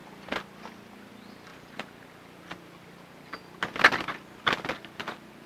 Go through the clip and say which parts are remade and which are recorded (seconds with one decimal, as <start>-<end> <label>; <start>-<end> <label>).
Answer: 0.0-5.5 recorded